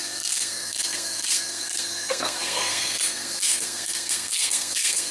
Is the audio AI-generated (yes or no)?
yes